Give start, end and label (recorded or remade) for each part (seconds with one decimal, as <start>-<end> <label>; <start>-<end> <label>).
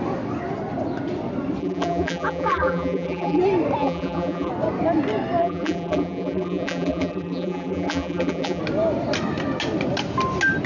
0.0-1.6 recorded; 1.6-3.4 remade; 3.4-3.8 recorded; 3.8-4.5 remade; 4.5-5.4 recorded; 5.4-8.6 remade; 8.6-10.7 recorded